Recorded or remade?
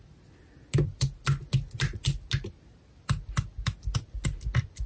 recorded